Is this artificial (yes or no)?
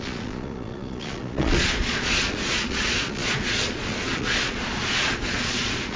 yes